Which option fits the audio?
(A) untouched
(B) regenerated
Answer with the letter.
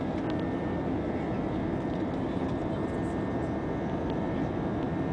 A